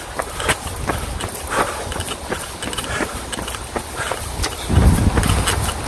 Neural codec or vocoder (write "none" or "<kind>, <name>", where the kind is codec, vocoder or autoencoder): none